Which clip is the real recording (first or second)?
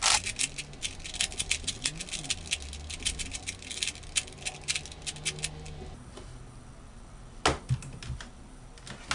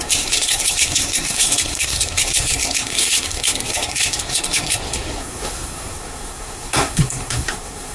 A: first